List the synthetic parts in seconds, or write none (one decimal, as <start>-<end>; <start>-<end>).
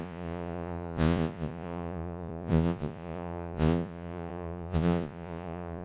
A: 0.0-5.8